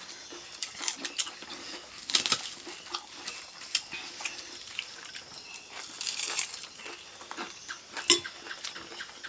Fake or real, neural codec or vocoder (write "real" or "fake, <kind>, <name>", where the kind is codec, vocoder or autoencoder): real